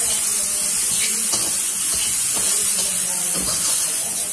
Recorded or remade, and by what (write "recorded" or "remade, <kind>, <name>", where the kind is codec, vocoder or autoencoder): remade, vocoder, Vocos